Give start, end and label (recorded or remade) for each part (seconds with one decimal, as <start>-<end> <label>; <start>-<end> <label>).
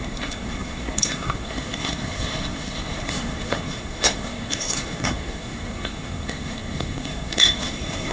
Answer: 0.0-8.1 remade